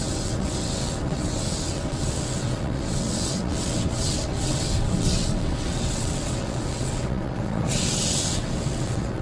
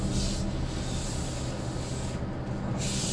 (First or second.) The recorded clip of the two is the second